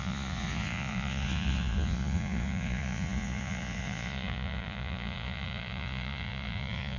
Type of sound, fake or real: fake